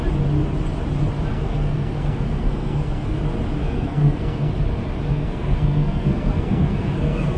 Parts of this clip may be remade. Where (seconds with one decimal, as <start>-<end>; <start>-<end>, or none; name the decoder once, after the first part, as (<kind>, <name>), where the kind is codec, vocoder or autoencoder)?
1.3-3.2 (codec, SNAC); 3.6-4.5; 5.1-7.4